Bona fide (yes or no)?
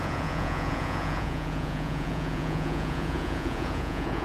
no